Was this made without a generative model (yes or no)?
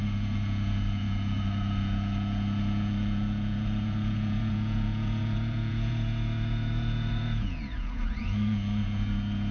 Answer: no